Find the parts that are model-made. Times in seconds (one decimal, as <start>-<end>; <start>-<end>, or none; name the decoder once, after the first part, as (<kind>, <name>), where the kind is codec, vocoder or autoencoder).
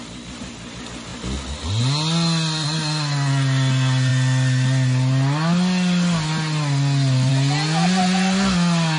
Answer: none